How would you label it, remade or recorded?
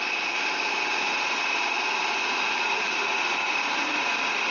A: remade